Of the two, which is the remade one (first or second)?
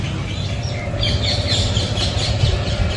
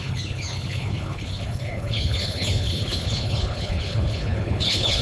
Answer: second